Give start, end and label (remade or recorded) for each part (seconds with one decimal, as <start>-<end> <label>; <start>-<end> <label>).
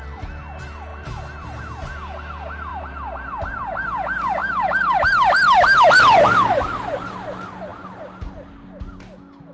0.0-2.7 recorded; 2.7-3.4 remade; 3.4-4.4 recorded; 4.4-5.3 remade; 5.3-9.5 recorded